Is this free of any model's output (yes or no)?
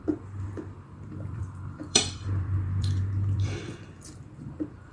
no